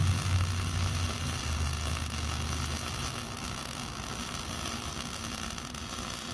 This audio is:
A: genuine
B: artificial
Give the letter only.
A